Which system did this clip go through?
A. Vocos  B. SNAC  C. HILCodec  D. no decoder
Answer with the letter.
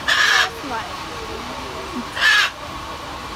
D